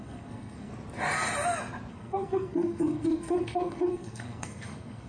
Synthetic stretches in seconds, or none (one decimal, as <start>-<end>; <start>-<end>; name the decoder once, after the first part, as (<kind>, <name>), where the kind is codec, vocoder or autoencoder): 0.0-0.7 (codec, SNAC); 1.9-5.1